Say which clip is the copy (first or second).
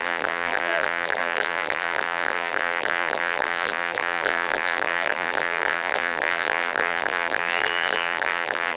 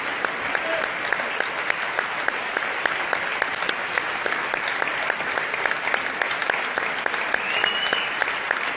first